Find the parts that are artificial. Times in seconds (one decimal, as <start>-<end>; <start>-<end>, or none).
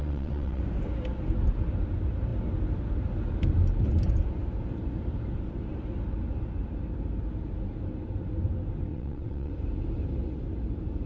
0.0-0.6; 8.9-9.5